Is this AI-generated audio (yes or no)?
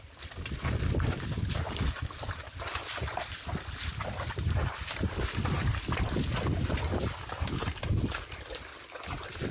no